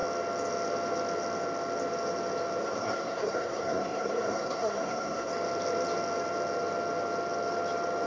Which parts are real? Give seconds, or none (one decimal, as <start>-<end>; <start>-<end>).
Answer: 0.0-2.6; 5.3-8.1